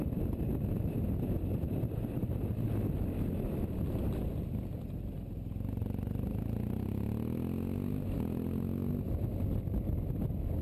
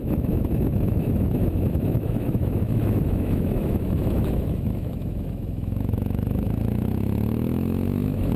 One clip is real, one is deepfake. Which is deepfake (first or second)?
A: second